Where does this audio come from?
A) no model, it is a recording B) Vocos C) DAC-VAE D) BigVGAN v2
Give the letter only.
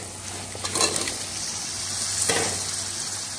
A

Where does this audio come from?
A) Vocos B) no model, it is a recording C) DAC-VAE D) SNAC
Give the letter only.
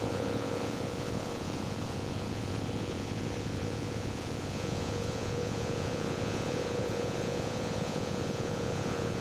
A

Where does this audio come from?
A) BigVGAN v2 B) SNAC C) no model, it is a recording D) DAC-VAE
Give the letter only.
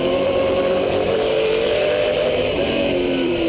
A